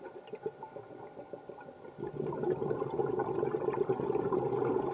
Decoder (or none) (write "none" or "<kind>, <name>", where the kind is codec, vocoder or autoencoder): none